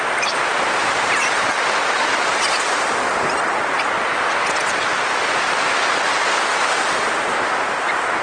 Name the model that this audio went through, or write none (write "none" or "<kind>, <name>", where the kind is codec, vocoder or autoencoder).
none